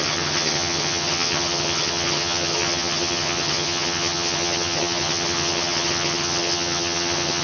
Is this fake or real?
fake